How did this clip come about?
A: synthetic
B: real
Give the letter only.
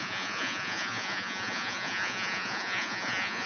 A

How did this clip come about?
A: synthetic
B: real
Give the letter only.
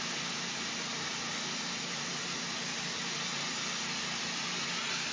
B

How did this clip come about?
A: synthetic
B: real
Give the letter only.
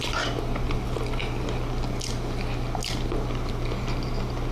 B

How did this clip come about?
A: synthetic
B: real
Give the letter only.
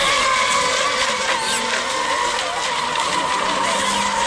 B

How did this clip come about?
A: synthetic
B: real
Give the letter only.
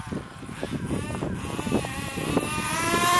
B